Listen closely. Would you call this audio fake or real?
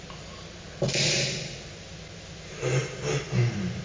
real